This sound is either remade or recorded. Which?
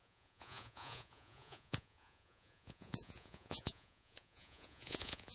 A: remade